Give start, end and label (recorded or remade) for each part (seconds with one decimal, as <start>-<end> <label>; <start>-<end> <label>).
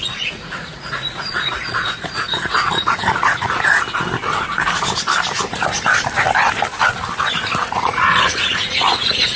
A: 0.0-3.7 remade; 3.7-7.6 recorded; 7.6-9.4 remade